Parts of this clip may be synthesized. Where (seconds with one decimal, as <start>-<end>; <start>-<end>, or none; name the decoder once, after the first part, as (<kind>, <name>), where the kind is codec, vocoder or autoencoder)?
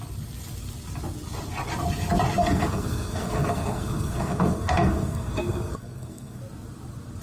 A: 2.4-6.4 (codec, SNAC)